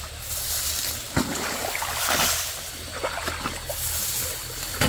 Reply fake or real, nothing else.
real